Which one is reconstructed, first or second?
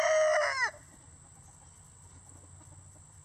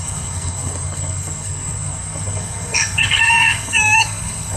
second